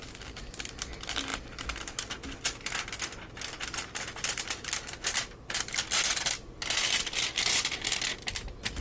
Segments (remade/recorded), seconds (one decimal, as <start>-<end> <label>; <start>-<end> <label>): 0.0-8.8 recorded